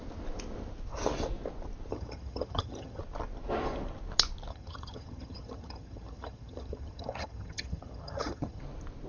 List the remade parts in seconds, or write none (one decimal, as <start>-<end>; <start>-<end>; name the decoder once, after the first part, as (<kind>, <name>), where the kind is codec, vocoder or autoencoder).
1.9-3.0 (vocoder, HiFi-GAN); 4.5-8.6